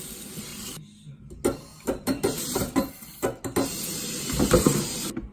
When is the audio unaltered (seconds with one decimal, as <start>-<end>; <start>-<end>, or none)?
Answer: 0.0-1.7; 2.9-5.3